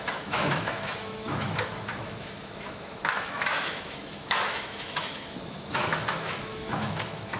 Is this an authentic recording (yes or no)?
no